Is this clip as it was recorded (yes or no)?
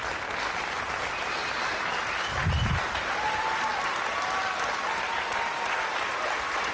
yes